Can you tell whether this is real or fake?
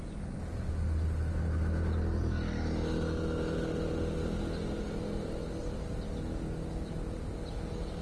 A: real